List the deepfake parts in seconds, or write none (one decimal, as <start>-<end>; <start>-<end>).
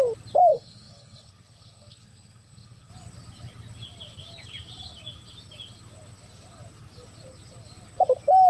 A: 0.5-2.9